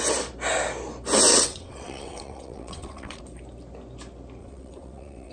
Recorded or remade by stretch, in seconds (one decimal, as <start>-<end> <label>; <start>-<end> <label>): 0.0-1.3 recorded; 1.3-3.2 remade; 3.2-4.4 recorded; 4.4-5.3 remade